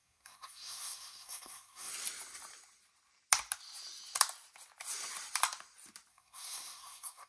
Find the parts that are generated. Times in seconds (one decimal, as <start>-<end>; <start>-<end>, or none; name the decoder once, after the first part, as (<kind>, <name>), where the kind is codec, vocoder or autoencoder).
0.0-1.9 (codec, SNAC); 6.1-7.3